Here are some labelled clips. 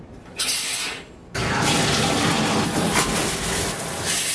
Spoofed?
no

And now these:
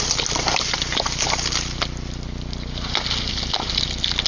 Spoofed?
no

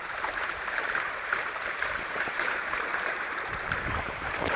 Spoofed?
yes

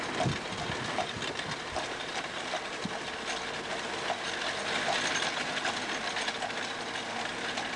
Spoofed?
no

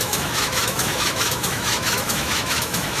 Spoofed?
yes